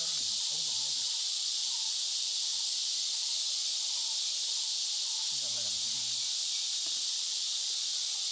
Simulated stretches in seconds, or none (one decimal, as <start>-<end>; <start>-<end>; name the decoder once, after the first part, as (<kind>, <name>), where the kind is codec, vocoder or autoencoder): 0.0-2.5 (vocoder, BigVGAN v2); 6.9-8.3